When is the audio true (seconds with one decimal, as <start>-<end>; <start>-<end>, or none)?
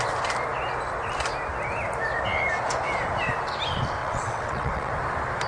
0.0-4.0; 4.9-5.5